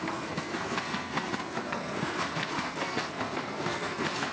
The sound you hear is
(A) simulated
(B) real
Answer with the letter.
A